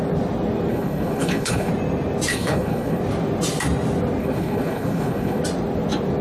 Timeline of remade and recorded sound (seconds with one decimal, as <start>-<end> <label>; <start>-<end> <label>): 0.0-0.7 recorded; 0.7-1.7 remade; 1.7-2.3 recorded; 2.3-3.0 remade; 3.0-4.2 recorded; 4.2-5.4 remade; 5.4-6.2 recorded